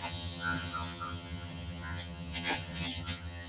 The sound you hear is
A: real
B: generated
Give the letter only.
B